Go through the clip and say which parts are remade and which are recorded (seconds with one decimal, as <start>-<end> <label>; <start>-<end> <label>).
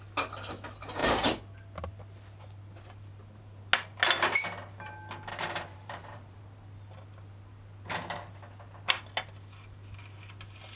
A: 0.0-5.3 recorded; 5.3-6.4 remade; 6.4-10.8 recorded